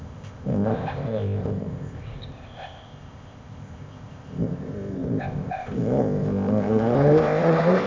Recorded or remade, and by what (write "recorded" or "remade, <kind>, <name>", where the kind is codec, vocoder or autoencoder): remade, codec, ZipCodec